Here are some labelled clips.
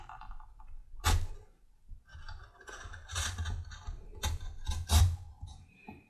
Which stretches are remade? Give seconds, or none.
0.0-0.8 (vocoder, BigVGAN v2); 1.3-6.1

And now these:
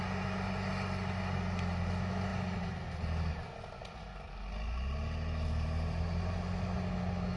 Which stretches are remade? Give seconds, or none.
none